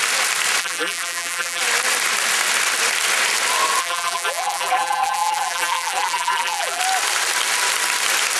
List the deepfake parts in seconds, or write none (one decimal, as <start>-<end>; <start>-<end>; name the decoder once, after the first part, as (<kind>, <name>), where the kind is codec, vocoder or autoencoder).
0.6-1.6 (vocoder, BigVGAN v2); 3.8-6.8